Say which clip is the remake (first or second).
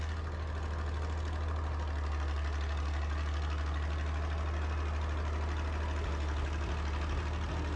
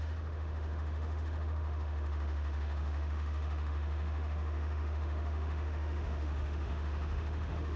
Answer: second